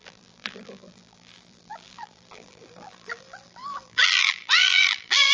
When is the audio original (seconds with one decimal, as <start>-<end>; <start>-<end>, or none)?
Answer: none